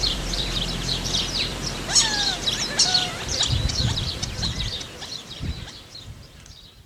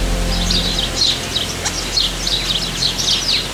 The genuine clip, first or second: second